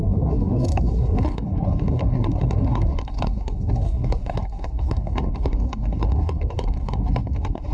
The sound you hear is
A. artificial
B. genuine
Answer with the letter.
A